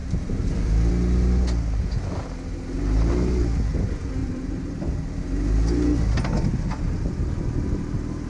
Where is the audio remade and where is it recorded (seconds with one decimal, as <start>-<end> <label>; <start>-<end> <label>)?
0.0-0.9 remade; 0.9-4.2 recorded; 4.2-4.8 remade; 4.8-8.3 recorded